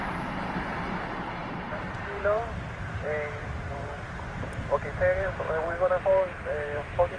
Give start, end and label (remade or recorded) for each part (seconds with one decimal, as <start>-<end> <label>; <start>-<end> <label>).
0.0-7.2 remade